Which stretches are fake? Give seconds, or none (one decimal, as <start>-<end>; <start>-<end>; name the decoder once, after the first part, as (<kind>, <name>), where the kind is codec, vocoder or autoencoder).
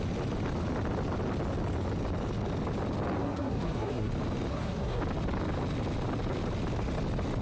3.2-4.1 (codec, SNAC); 4.5-5.0